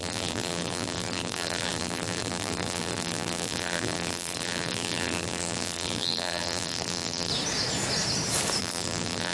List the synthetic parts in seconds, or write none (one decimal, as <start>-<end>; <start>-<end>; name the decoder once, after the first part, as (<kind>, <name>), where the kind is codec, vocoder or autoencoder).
0.0-7.3 (vocoder, BigVGAN v2); 8.6-9.3